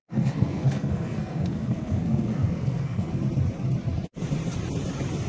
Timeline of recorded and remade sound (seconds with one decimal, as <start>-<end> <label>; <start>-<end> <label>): 0.0-3.2 remade; 3.2-5.3 recorded